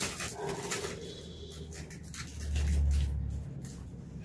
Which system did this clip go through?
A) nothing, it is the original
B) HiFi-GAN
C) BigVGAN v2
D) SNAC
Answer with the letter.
A